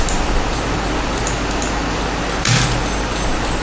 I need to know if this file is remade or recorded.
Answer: recorded